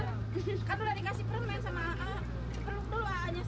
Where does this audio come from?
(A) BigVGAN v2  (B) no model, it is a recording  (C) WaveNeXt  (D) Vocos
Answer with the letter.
B